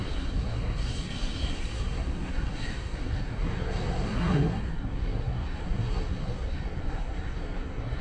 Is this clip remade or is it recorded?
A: remade